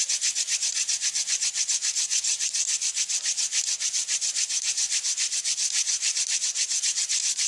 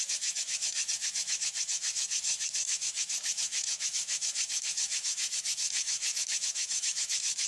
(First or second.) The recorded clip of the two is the first